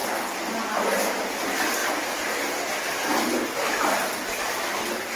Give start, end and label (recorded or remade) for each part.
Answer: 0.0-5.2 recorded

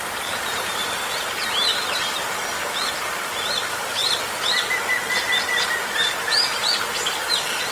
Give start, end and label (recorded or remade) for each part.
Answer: 0.0-7.7 recorded

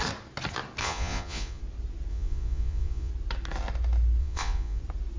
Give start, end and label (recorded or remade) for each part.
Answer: 0.0-0.8 recorded; 0.8-1.6 remade; 1.6-2.1 recorded; 2.1-3.1 remade; 3.1-4.2 recorded; 4.2-4.8 remade; 4.8-5.2 recorded